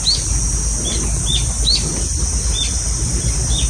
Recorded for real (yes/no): yes